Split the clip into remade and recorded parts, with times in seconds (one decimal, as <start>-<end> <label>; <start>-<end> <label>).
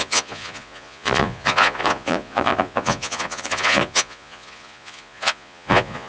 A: 0.0-6.1 remade